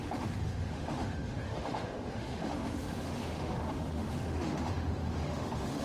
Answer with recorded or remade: remade